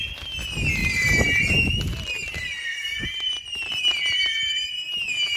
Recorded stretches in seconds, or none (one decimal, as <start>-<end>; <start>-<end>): 0.0-0.8; 1.7-2.5; 4.7-5.4